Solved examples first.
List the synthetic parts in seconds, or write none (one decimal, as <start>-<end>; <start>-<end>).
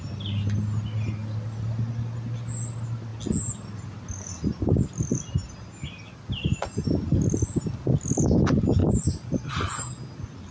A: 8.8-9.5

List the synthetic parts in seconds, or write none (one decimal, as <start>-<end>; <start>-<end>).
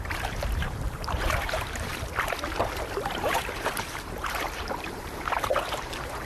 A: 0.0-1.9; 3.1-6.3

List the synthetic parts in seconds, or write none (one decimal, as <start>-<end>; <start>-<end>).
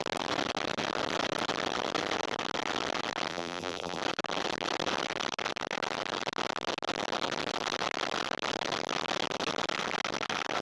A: 3.3-4.0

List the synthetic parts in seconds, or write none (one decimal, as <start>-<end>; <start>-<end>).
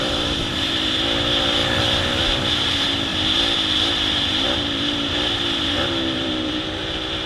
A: 0.0-1.6; 2.2-3.1; 3.8-7.3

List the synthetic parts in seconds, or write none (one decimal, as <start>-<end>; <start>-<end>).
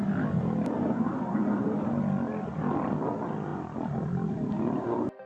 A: 3.5-4.3